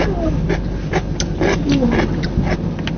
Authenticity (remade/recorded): recorded